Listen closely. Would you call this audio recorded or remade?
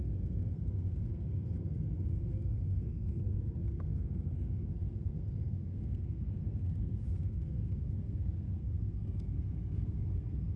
remade